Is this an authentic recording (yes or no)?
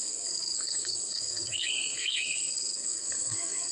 no